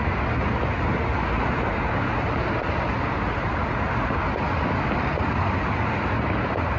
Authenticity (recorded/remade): recorded